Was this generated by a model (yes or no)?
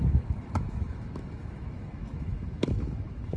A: yes